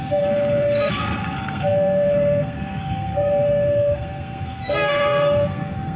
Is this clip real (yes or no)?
no